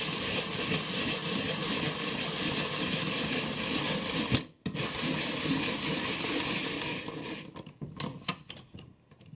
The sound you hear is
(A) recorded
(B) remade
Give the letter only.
A